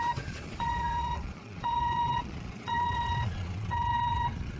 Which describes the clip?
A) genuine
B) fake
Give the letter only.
B